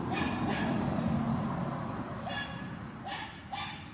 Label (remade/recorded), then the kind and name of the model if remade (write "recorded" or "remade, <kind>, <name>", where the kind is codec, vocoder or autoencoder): recorded